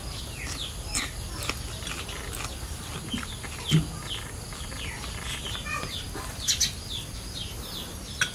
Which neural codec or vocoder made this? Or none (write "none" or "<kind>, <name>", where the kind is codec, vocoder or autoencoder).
none